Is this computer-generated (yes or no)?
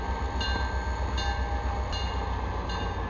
no